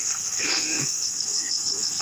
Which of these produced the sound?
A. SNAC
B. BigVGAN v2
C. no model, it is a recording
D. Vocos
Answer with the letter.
A